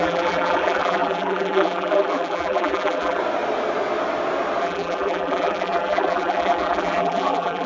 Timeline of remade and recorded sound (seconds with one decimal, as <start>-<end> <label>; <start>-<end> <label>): 0.0-3.2 remade; 3.2-4.6 recorded; 4.6-7.7 remade